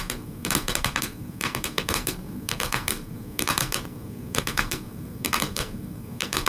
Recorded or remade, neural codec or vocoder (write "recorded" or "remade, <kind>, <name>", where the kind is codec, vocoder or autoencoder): remade, codec, SNAC